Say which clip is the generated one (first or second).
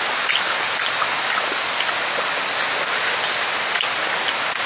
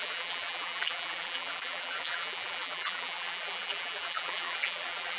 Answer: second